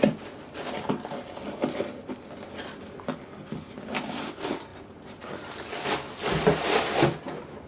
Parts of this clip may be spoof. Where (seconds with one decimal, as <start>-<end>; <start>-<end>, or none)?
none